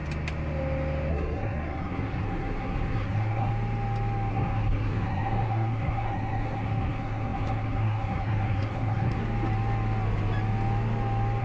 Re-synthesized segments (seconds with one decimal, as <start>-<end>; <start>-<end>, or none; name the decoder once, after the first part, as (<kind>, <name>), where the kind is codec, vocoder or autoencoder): 1.1-3.5 (codec, SNAC); 4.3-9.2